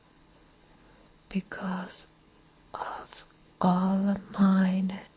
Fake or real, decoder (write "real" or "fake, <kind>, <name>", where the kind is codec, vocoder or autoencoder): fake, codec, HILCodec